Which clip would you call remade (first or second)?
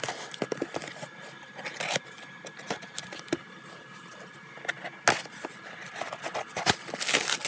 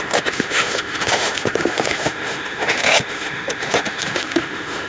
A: second